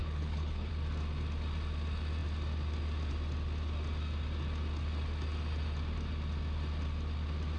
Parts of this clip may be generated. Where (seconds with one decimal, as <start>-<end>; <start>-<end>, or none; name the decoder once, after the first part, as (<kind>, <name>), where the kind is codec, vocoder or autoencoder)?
0.0-0.7 (codec, HILCodec)